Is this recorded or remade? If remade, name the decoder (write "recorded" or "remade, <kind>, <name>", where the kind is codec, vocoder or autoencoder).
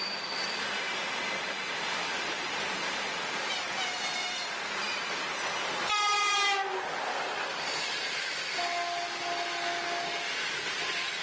recorded